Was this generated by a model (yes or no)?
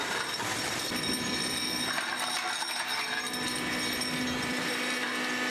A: no